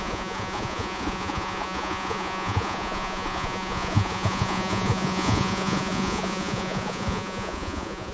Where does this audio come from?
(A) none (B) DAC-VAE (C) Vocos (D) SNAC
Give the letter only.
C